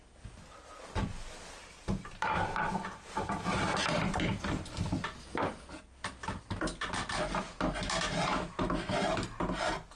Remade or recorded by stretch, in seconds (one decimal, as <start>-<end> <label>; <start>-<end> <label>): 0.0-8.3 recorded; 8.3-9.0 remade; 9.0-10.0 recorded